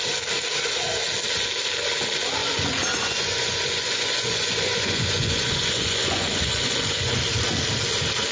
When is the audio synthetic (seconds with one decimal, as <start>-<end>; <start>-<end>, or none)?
2.4-7.2